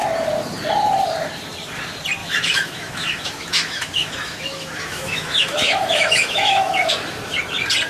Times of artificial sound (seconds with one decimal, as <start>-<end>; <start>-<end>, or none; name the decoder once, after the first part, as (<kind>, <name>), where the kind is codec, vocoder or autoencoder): 2.2-6.9 (autoencoder, DAC-VAE)